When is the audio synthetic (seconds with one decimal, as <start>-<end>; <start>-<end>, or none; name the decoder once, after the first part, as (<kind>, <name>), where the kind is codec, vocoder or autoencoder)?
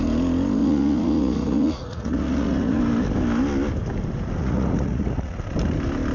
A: 0.6-2.8 (vocoder, Vocos); 4.4-5.4